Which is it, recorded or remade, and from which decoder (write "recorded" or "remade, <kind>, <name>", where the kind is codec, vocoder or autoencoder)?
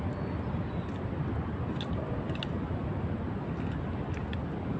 recorded